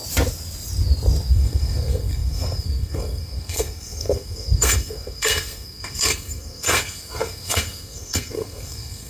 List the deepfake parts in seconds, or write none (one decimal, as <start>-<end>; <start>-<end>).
1.3-9.1